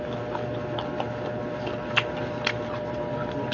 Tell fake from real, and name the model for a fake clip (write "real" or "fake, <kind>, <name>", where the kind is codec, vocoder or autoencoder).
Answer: fake, vocoder, BigVGAN v2